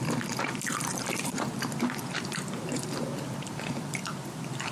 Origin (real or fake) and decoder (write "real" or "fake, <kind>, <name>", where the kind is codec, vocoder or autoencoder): fake, vocoder, BigVGAN v2